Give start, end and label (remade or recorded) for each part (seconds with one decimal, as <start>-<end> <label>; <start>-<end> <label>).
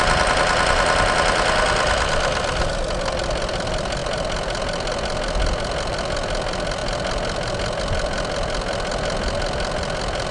0.0-10.3 recorded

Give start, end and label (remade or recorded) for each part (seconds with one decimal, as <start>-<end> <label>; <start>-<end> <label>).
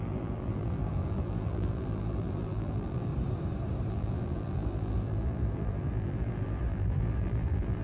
0.0-3.1 remade; 3.1-3.9 recorded; 3.9-7.8 remade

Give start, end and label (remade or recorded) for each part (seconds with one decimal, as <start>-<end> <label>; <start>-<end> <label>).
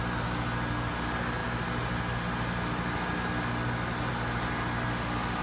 0.0-5.4 recorded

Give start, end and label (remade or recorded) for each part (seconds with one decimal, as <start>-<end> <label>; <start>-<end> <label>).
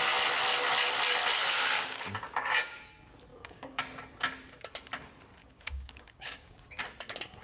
0.0-1.4 recorded; 1.4-2.8 remade; 2.8-3.3 recorded; 3.3-3.8 remade; 3.8-5.4 recorded; 5.4-6.8 remade; 6.8-7.4 recorded